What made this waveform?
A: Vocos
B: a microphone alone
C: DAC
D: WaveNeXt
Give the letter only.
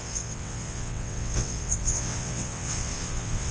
D